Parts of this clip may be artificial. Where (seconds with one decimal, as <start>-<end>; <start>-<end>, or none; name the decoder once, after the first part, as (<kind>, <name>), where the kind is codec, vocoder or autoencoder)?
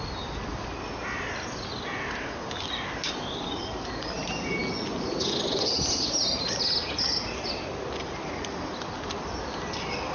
none